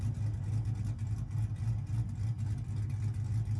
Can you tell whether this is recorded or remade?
recorded